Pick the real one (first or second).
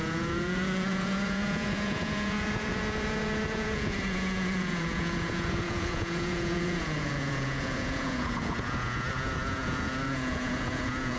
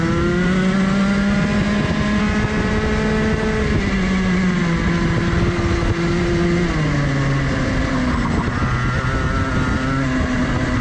second